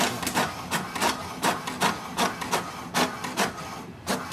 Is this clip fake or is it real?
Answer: real